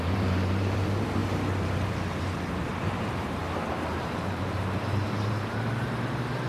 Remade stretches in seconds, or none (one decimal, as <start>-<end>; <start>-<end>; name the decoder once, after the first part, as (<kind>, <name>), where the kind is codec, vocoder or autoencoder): 0.0-1.2 (vocoder, BigVGAN v2); 2.8-3.4; 3.9-5.8